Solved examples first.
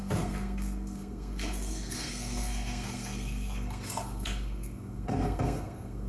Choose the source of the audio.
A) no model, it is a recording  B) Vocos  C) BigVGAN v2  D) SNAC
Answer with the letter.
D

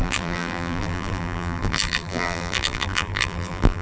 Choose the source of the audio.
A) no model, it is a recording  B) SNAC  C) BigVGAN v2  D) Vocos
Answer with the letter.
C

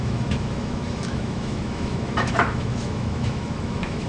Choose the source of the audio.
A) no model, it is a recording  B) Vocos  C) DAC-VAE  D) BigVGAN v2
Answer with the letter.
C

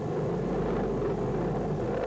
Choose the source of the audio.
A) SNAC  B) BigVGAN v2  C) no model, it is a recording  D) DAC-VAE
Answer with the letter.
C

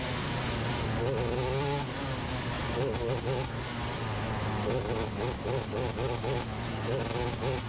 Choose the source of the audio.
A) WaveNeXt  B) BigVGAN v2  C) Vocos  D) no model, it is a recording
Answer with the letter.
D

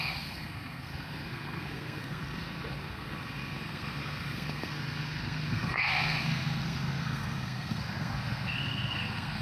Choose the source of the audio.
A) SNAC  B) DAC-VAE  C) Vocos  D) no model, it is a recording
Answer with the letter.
A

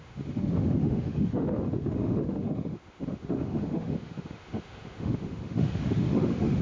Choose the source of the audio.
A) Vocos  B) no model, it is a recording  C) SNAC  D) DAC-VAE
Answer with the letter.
D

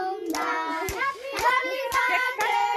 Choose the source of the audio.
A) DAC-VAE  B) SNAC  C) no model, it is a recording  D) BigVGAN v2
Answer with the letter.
C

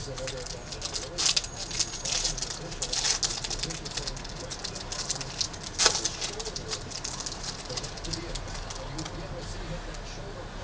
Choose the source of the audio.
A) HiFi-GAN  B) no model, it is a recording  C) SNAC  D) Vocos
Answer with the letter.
B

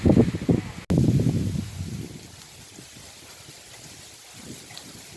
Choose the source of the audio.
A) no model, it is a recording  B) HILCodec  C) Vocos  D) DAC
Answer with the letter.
A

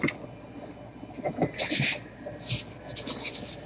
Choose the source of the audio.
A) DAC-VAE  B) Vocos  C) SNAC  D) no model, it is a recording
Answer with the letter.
D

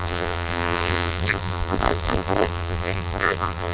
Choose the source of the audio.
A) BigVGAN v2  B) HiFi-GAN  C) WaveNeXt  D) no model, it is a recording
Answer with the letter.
A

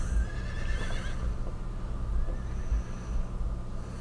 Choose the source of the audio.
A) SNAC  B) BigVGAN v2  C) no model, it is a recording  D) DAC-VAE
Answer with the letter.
C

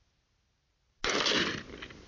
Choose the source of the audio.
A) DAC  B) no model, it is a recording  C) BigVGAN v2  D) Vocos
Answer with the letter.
B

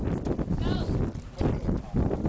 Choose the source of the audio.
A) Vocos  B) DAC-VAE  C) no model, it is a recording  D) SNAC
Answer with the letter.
C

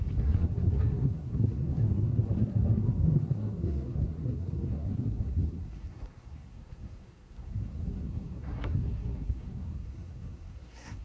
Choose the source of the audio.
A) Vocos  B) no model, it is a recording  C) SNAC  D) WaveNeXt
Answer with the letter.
C